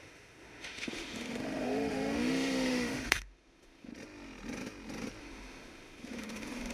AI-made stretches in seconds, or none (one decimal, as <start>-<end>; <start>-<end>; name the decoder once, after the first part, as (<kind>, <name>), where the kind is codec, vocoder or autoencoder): 0.0-3.9 (autoencoder, DAC-VAE); 5.2-6.7